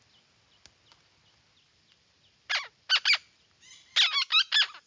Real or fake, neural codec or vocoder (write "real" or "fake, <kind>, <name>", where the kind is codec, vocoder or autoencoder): real